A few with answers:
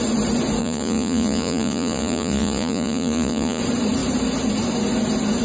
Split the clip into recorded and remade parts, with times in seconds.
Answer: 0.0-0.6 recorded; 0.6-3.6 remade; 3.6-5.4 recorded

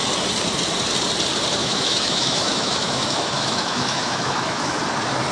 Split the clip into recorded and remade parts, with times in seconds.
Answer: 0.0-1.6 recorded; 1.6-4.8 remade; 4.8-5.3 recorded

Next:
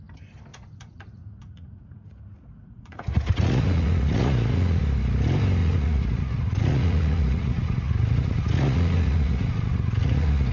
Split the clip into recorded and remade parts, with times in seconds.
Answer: 0.0-0.5 recorded; 0.5-4.8 remade; 4.8-5.6 recorded; 5.6-10.5 remade

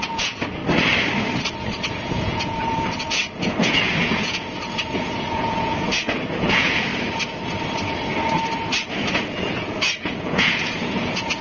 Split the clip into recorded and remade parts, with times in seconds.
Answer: 0.0-0.6 remade; 0.6-1.9 recorded; 1.9-6.9 remade; 6.9-9.1 recorded; 9.1-11.4 remade